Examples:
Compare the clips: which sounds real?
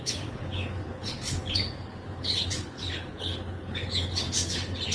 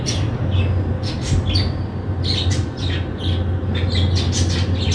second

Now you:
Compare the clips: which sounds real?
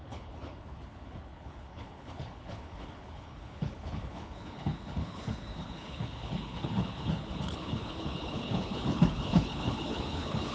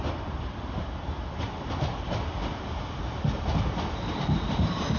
second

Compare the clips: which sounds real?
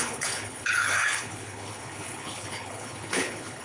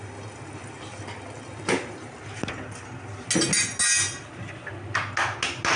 second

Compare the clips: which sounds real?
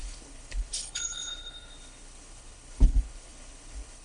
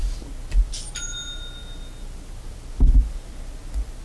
second